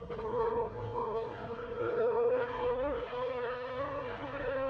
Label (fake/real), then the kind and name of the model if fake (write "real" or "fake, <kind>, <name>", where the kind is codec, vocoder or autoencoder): fake, codec, SNAC